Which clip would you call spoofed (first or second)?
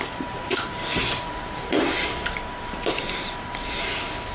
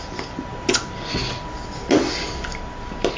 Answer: first